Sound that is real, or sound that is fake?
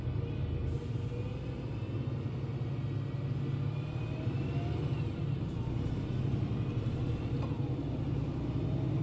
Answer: real